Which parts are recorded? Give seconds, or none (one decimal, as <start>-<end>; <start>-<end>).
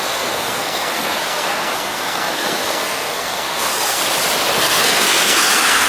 4.0-4.6